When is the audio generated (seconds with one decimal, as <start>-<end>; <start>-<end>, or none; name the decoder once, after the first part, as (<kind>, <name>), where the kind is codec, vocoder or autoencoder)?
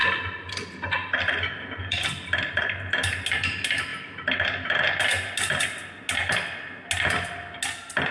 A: 0.0-2.8 (vocoder, BigVGAN v2)